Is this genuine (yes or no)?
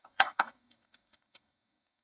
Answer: no